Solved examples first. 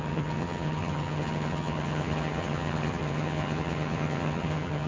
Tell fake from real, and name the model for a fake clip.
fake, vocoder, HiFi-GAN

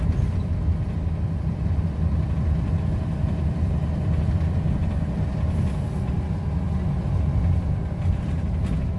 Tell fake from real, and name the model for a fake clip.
real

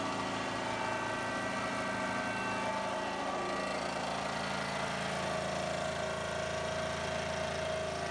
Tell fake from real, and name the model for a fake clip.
real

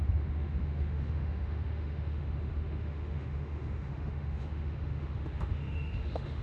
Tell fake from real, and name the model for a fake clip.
fake, autoencoder, DAC-VAE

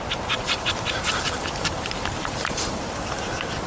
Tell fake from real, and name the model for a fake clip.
fake, vocoder, BigVGAN v2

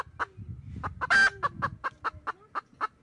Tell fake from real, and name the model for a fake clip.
real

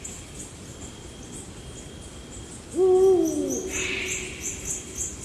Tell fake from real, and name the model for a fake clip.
real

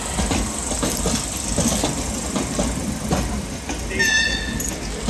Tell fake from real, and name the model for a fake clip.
real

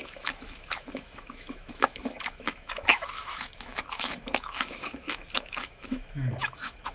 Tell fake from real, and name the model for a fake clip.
fake, autoencoder, DAC-VAE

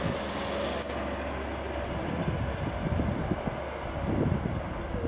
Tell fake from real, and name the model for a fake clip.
real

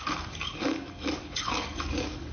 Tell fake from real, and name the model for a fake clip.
fake, codec, DAC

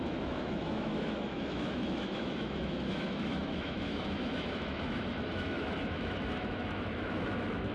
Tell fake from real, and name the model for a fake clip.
fake, autoencoder, DAC-VAE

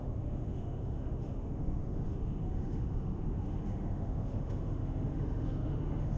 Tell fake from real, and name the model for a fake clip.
fake, autoencoder, DAC-VAE